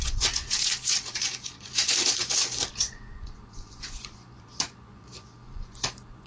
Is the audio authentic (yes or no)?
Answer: no